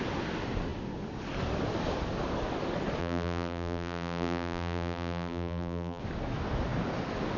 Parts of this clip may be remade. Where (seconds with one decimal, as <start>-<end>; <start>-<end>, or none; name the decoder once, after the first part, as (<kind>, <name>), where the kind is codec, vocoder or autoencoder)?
3.0-6.0 (vocoder, BigVGAN v2)